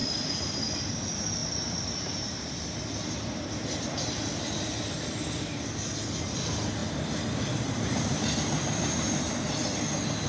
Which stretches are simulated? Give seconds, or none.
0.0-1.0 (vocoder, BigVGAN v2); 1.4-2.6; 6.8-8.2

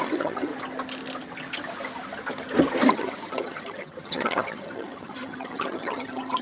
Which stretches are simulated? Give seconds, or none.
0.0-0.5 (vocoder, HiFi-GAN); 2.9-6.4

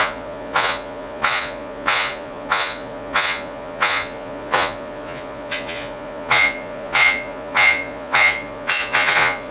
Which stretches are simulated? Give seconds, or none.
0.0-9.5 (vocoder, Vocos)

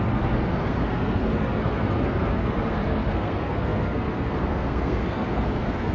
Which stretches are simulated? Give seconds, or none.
0.0-5.9 (codec, SNAC)

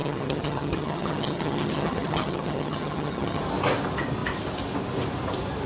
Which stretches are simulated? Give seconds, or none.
0.0-3.4 (vocoder, HiFi-GAN)